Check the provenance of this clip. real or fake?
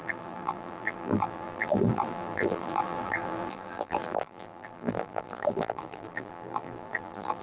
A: fake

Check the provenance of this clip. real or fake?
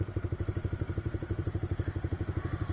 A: fake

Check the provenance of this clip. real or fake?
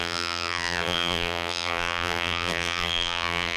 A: fake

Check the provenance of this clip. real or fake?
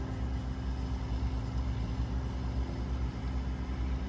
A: real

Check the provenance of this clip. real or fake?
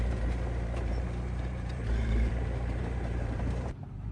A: fake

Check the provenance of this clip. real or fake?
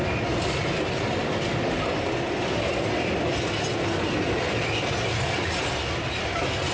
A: real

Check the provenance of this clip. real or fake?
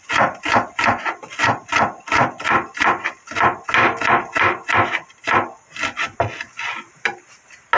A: real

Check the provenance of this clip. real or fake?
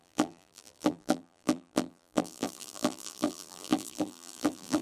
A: fake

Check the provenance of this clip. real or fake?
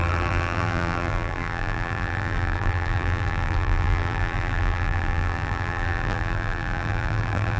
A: fake